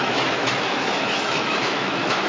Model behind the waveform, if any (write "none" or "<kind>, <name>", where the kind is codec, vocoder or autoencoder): autoencoder, DAC-VAE